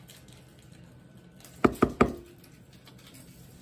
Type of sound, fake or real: real